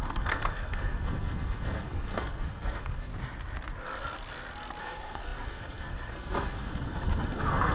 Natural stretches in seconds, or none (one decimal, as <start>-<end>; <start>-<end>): 3.1-4.8